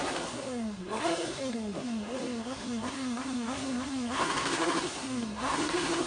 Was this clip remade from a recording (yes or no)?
yes